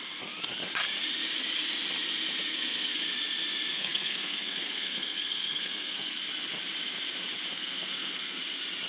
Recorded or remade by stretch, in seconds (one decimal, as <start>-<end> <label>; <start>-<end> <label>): 0.0-2.5 recorded; 2.5-3.0 remade; 3.0-3.7 recorded; 3.7-6.2 remade; 6.2-7.5 recorded; 7.5-8.4 remade; 8.4-8.9 recorded